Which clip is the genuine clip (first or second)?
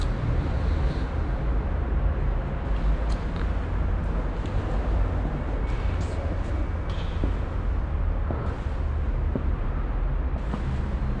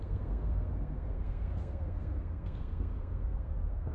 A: first